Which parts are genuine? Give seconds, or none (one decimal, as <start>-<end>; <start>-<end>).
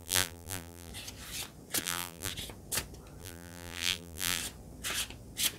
0.9-1.8; 2.3-3.2; 4.4-5.6